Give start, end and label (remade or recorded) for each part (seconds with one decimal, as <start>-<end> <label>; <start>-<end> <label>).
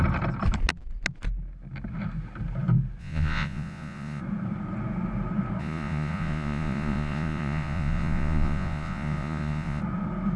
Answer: 0.0-3.0 recorded; 3.0-4.2 remade; 4.2-5.6 recorded; 5.6-9.8 remade; 9.8-10.4 recorded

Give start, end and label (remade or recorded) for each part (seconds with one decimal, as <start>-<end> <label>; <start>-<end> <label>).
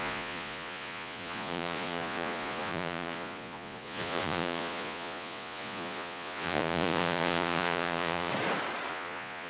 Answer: 0.0-8.3 remade; 8.3-8.9 recorded; 8.9-9.5 remade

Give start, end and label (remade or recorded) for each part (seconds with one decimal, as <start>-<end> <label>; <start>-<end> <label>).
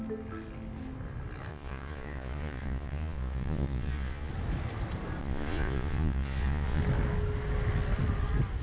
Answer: 0.0-1.5 recorded; 1.5-4.3 remade; 4.3-5.2 recorded; 5.2-6.8 remade; 6.8-8.6 recorded